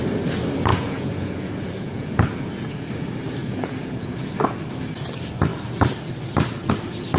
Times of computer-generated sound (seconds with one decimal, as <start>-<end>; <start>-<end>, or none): 0.7-2.9; 3.4-4.3